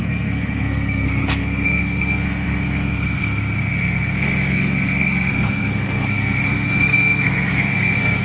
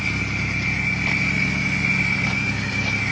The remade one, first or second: first